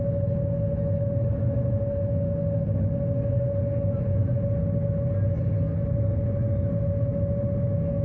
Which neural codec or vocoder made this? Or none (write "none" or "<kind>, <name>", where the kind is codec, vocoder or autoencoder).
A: none